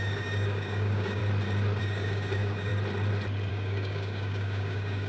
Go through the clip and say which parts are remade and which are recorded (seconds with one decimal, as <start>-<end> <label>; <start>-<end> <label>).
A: 0.0-1.2 remade; 1.2-1.8 recorded; 1.8-2.7 remade; 2.7-3.5 recorded; 3.5-5.1 remade